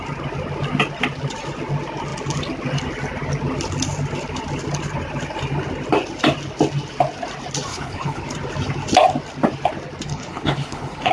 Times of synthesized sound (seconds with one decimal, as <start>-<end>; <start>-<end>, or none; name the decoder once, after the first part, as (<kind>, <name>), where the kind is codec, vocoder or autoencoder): 7.7-8.2 (codec, HILCodec); 10.1-11.1